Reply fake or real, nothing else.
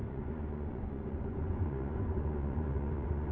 fake